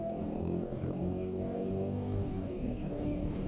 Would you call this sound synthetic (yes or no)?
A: yes